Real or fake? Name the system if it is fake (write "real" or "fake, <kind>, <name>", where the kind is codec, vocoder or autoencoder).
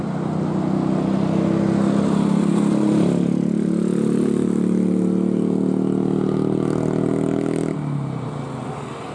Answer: real